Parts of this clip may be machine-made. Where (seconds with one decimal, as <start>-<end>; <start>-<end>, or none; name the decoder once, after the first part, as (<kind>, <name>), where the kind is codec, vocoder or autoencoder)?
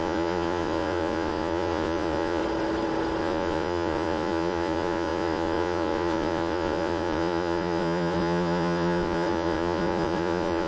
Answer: 0.0-2.4 (vocoder, Vocos); 3.2-10.7